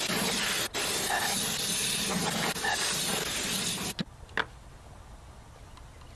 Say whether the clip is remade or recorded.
recorded